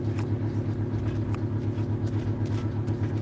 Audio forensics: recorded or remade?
recorded